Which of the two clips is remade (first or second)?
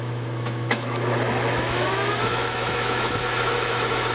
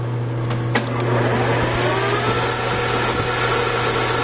first